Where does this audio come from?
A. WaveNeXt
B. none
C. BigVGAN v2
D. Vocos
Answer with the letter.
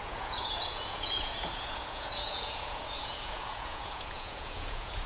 D